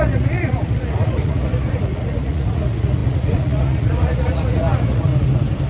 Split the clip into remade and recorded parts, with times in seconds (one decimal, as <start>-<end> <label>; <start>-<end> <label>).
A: 0.0-5.1 remade; 5.1-5.7 recorded